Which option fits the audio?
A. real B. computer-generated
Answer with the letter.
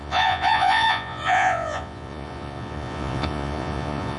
B